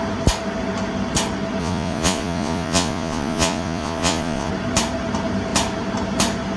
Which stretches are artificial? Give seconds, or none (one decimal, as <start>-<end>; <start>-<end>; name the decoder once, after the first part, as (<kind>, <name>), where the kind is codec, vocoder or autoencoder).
1.6-4.5 (vocoder, Vocos)